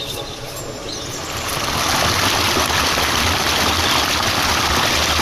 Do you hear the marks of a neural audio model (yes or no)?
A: no